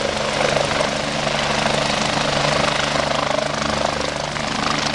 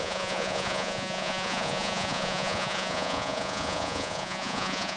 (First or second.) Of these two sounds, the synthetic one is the second